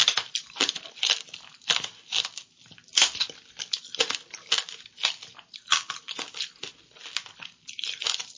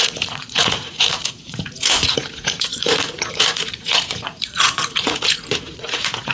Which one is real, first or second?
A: first